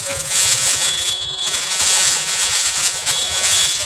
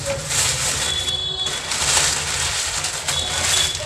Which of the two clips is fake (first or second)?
first